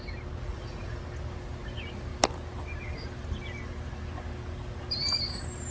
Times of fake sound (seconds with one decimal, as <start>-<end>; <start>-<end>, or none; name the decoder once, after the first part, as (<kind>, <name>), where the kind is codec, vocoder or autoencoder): 0.5-1.0 (vocoder, Vocos)